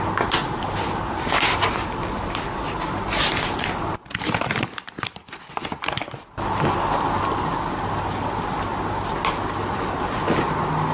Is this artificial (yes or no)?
no